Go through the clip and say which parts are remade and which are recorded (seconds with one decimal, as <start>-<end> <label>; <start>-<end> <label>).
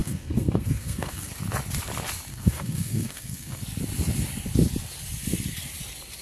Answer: 0.0-1.3 remade; 1.3-2.3 recorded; 2.3-3.6 remade; 3.6-6.2 recorded